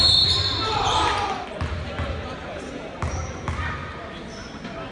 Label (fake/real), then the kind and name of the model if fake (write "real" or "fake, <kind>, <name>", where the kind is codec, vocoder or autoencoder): real